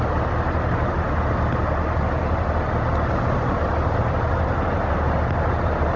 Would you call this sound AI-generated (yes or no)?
no